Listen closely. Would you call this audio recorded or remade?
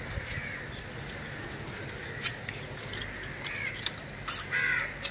recorded